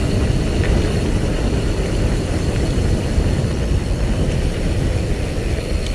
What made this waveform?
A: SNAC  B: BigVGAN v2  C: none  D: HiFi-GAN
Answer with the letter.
B